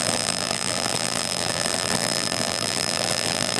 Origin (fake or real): fake